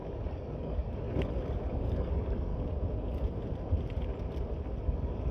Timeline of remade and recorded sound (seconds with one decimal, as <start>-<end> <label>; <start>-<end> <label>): 0.0-2.5 remade; 2.5-4.8 recorded; 4.8-5.3 remade